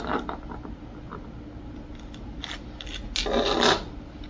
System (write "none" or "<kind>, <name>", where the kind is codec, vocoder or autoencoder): none